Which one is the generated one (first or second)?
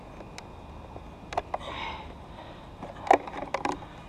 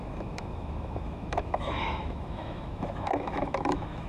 second